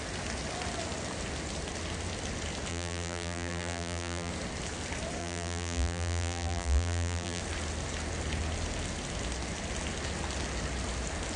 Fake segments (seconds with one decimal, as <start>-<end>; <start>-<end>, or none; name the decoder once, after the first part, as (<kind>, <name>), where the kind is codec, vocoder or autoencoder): 2.7-4.3 (vocoder, BigVGAN v2); 5.2-7.4